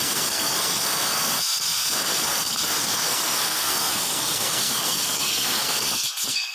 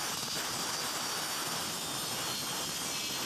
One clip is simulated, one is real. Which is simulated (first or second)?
first